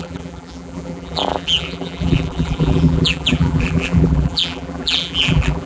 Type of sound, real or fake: fake